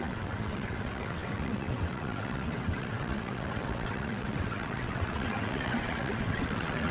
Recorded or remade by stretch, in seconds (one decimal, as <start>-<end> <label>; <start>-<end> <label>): 0.0-6.9 remade